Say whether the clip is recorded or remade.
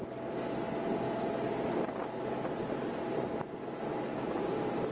recorded